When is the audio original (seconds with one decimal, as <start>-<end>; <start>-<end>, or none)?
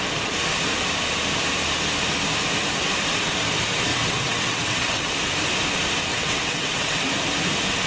0.0-3.9; 5.1-6.1; 7.1-7.9